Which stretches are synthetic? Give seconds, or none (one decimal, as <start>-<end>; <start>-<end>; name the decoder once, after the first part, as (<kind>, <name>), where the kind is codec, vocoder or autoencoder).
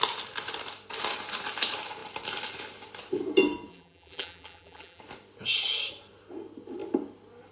3.7-5.0 (vocoder, BigVGAN v2)